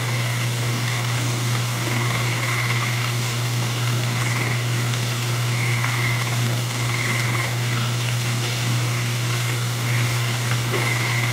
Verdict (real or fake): fake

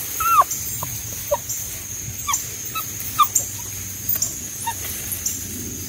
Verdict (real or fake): real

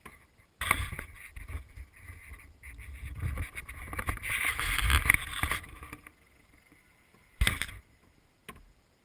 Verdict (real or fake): real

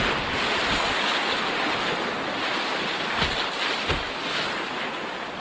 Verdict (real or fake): real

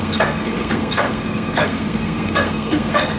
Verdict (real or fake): fake